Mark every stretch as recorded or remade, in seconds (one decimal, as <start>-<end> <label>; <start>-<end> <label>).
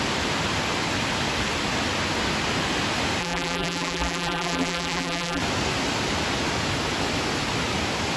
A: 0.0-3.2 recorded; 3.2-5.4 remade; 5.4-8.2 recorded